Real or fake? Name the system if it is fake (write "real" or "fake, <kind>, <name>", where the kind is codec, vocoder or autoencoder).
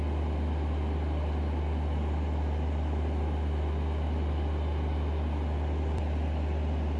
real